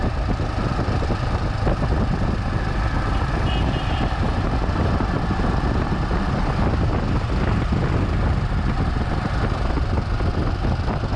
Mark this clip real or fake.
real